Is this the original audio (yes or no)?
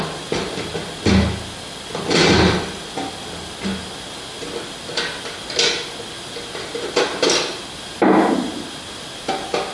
yes